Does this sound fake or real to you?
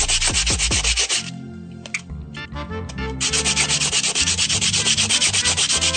real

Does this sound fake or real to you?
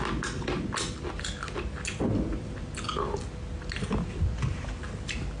real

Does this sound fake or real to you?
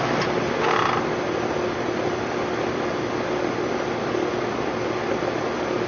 real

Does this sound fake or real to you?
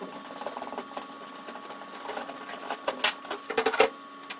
real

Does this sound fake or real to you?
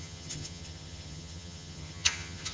fake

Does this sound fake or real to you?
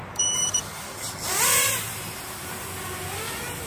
fake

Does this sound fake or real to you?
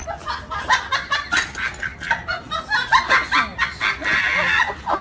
real